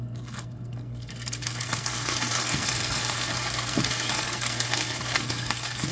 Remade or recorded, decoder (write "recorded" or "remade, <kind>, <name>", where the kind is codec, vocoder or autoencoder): remade, codec, SNAC